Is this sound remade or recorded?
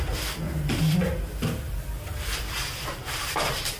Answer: recorded